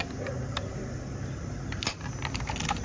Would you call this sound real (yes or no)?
yes